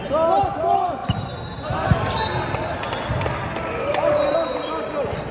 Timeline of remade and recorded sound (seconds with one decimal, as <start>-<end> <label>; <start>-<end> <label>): 0.0-5.3 recorded